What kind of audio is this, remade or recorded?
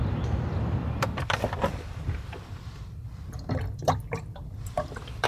remade